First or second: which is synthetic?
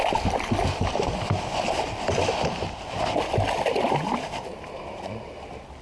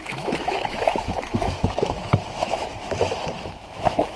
second